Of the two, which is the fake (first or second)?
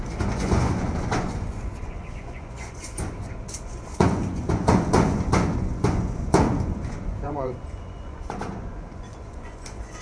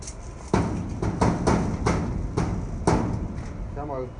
first